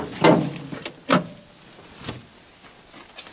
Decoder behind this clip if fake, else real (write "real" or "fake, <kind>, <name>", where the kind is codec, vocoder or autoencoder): real